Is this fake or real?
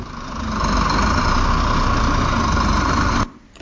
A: real